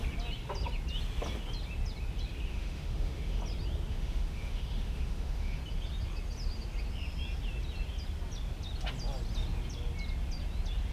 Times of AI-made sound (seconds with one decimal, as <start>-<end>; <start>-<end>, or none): 2.5-3.4; 3.9-5.6

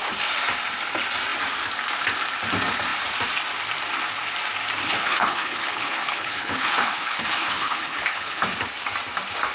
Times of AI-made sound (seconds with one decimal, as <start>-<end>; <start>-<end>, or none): 4.8-8.4

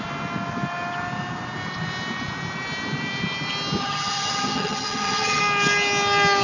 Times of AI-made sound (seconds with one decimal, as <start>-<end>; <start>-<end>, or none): 3.8-5.4